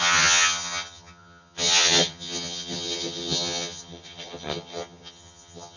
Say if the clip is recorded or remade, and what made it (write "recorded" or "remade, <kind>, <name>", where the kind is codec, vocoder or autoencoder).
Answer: remade, vocoder, HiFi-GAN